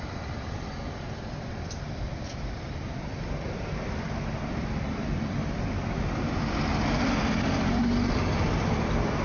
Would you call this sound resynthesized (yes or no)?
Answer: yes